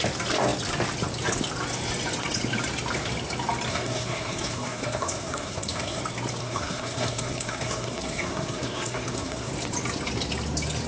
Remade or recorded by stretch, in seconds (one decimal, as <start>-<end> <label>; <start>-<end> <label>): 0.0-3.7 recorded; 3.7-6.0 remade; 6.0-6.4 recorded; 6.4-9.5 remade; 9.5-10.9 recorded